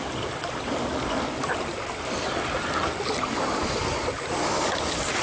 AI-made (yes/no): no